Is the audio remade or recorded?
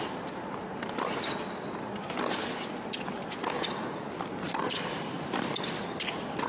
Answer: recorded